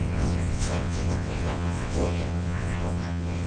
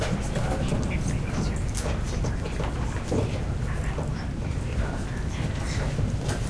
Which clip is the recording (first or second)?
second